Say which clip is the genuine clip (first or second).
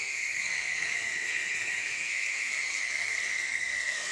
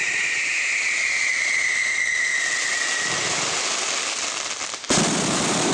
second